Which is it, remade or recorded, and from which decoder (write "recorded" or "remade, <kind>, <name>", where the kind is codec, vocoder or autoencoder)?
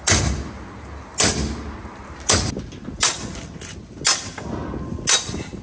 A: recorded